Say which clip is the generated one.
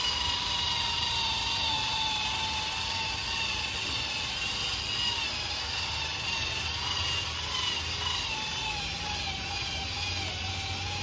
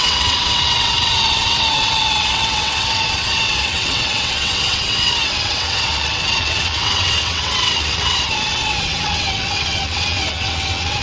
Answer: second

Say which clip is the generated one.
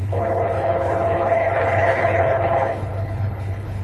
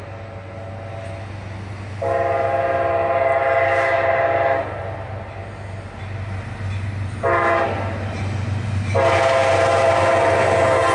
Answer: first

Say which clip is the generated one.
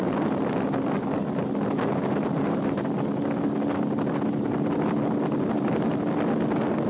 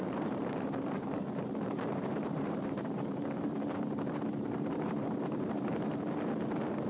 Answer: second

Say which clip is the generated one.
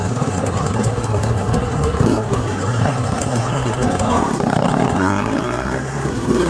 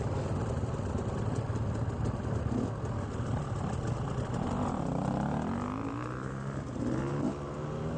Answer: first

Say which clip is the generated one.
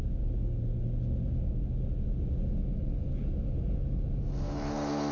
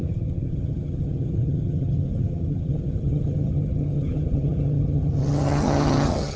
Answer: second